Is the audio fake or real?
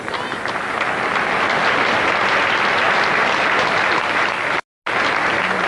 real